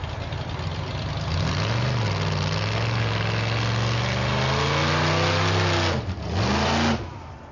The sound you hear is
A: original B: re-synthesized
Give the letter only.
A